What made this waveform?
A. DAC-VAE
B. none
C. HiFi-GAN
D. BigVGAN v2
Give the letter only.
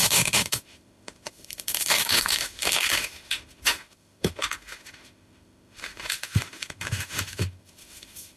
A